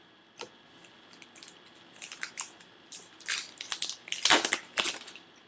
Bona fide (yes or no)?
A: yes